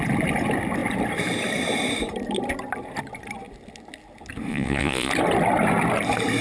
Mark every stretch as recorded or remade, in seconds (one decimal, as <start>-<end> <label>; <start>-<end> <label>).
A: 0.0-4.5 recorded; 4.5-5.1 remade; 5.1-6.4 recorded